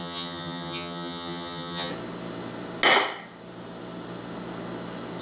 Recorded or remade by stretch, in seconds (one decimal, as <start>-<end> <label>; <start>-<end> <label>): 0.0-1.9 remade; 1.9-5.2 recorded